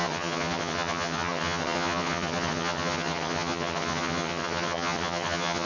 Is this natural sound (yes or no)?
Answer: no